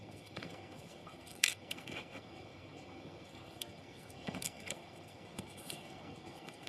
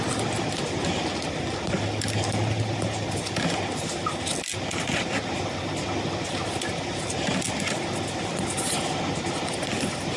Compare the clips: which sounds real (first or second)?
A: second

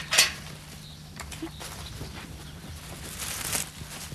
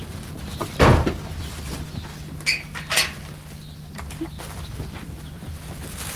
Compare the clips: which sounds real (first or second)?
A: second